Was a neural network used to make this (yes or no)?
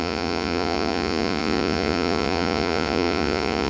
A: yes